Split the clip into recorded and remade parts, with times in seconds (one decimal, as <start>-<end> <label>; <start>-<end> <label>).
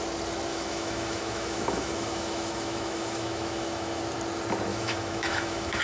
0.0-0.5 recorded; 0.5-4.0 remade; 4.0-4.7 recorded; 4.7-5.8 remade